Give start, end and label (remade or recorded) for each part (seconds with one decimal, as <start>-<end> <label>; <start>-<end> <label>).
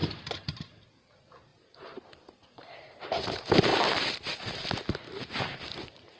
0.0-6.2 remade